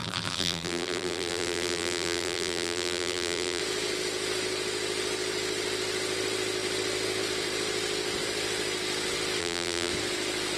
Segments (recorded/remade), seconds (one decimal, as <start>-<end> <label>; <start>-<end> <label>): 0.0-3.6 remade; 3.6-9.4 recorded; 9.4-9.9 remade; 9.9-10.6 recorded